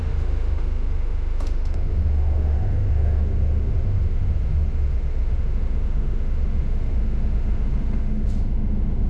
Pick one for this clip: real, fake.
fake